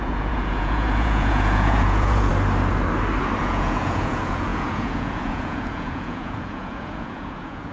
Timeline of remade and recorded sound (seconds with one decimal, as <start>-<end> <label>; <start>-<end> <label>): 0.0-2.3 remade; 2.3-3.4 recorded; 3.4-7.7 remade